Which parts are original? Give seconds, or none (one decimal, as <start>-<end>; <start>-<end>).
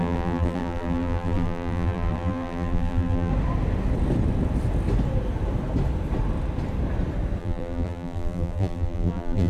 3.3-7.4